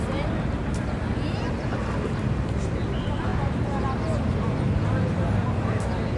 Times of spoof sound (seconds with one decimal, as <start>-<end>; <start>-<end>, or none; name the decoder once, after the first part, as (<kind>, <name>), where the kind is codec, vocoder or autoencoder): none